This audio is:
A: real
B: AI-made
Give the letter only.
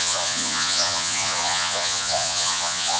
B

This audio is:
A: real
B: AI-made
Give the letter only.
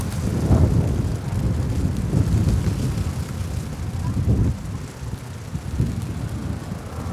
A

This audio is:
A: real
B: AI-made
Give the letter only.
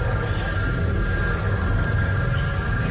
A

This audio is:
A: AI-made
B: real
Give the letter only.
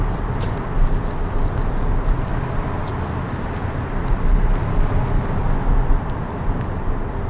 B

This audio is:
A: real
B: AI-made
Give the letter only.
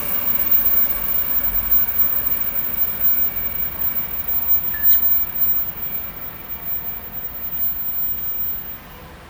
A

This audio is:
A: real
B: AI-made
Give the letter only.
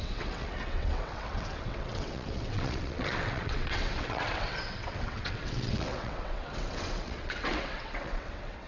B